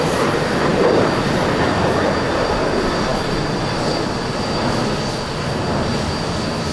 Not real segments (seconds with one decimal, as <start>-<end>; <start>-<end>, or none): none